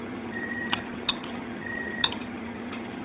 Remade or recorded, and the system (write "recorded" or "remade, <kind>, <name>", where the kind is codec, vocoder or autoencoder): remade, vocoder, HiFi-GAN